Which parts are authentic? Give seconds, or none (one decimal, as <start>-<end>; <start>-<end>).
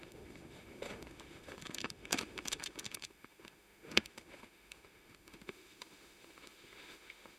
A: none